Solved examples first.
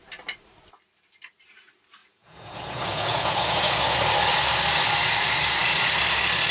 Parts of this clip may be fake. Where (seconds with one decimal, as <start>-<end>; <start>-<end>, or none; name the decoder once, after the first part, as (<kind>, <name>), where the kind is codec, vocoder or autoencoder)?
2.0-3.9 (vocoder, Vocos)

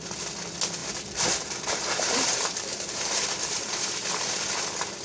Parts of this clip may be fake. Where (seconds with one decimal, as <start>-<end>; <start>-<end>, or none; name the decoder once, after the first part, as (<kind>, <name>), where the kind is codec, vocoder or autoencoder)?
0.8-3.7 (vocoder, BigVGAN v2)

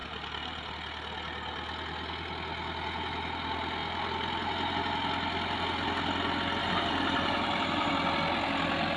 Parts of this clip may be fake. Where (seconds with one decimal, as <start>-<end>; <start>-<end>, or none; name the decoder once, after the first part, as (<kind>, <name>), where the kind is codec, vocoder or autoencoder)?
0.0-0.7 (vocoder, BigVGAN v2); 6.6-7.9